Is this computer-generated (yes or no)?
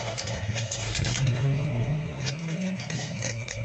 yes